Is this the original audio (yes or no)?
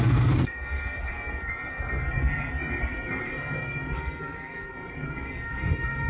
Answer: no